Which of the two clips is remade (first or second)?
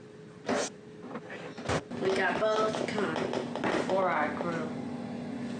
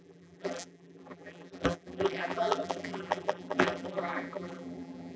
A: second